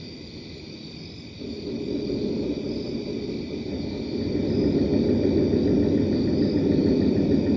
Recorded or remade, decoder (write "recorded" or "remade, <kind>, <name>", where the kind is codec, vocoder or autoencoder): recorded